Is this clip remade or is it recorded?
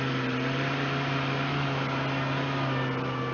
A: recorded